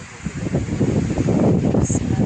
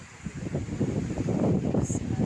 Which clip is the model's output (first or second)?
second